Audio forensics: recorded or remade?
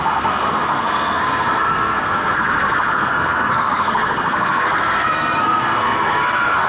remade